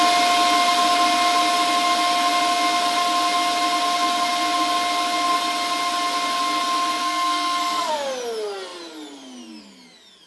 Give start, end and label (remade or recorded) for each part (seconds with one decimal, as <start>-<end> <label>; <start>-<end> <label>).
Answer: 0.0-7.0 recorded; 7.0-7.9 remade; 7.9-10.3 recorded